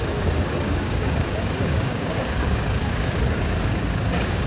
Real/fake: fake